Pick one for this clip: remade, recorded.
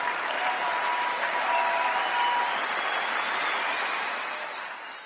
recorded